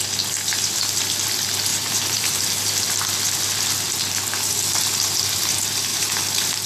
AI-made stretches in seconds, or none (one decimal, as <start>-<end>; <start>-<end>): 1.7-2.9; 5.9-6.7